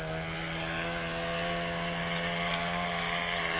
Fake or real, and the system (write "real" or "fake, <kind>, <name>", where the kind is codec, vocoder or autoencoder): real